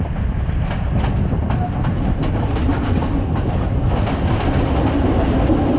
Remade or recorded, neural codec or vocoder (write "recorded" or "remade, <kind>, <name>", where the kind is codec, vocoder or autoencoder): recorded